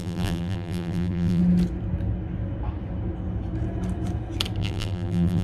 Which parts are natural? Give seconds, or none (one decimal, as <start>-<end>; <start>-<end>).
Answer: 1.4-4.6